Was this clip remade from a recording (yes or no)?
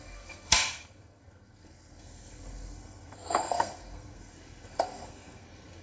yes